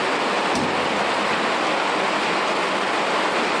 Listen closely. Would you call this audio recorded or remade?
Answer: recorded